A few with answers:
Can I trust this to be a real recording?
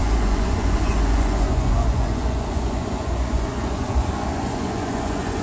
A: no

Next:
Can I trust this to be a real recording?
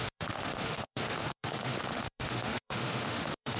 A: no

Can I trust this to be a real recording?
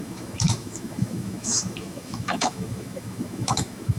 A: no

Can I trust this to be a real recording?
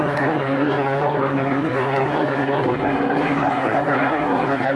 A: no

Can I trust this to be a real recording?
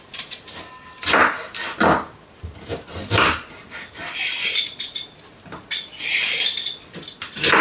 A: yes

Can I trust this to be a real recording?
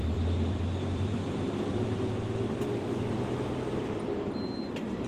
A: no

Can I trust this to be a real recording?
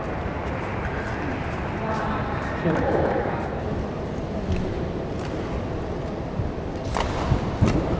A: yes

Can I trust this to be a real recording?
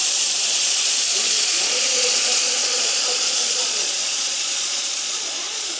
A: no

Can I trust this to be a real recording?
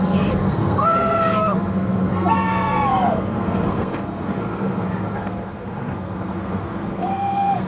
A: no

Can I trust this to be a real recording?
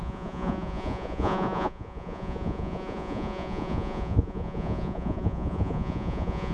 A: no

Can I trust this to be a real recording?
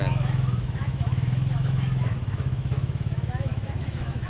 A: no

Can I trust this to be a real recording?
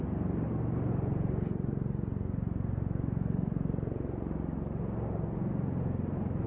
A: yes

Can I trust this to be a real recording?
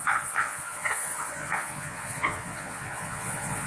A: no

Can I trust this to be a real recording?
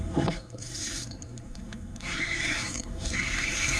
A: no